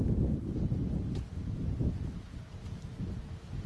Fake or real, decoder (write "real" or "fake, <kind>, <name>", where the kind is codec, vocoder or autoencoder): real